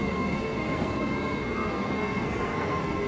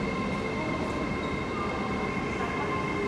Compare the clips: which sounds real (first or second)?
second